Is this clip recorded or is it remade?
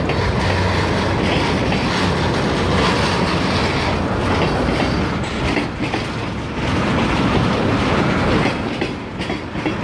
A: recorded